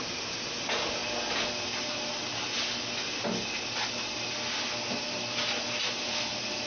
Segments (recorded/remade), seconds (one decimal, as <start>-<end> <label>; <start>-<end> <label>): 0.0-6.7 recorded